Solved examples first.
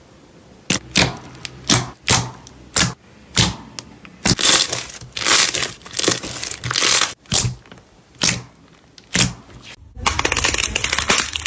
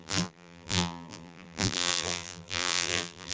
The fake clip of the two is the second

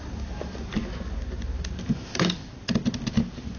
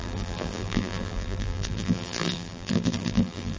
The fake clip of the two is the second